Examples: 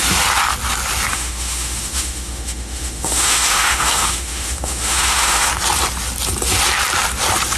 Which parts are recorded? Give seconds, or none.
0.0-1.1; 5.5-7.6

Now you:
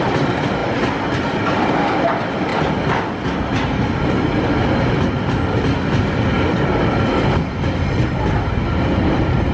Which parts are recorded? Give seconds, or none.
0.0-9.5